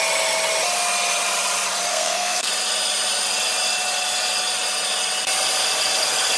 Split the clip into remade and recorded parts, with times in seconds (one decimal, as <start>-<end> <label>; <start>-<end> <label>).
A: 0.0-1.9 recorded; 1.9-2.5 remade; 2.5-6.4 recorded